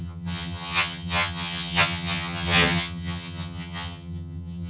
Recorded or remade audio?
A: remade